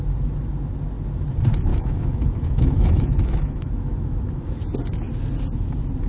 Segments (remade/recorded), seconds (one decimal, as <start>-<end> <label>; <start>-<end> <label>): 0.0-1.7 recorded; 1.7-4.6 remade; 4.6-6.1 recorded